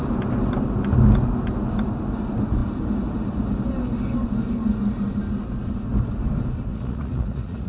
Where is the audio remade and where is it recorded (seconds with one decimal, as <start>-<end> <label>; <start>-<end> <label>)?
0.0-6.7 recorded; 6.7-7.7 remade